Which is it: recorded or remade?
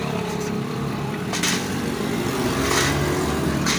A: remade